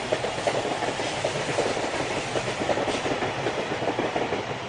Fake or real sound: real